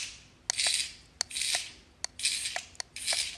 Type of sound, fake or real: real